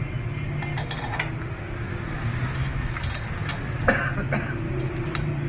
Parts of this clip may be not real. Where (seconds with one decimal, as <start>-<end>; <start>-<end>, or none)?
none